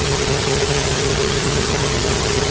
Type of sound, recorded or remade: remade